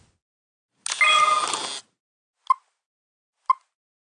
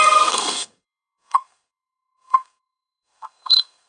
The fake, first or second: second